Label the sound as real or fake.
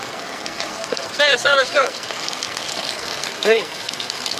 fake